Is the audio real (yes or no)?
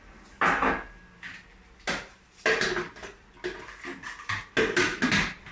yes